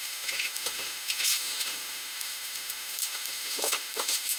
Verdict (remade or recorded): remade